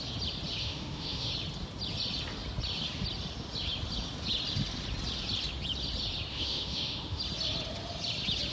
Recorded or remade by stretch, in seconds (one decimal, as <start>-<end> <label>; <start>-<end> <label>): 0.0-0.6 recorded; 0.6-1.3 remade; 1.3-6.3 recorded; 6.3-7.2 remade; 7.2-8.5 recorded